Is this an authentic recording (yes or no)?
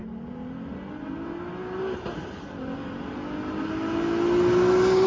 yes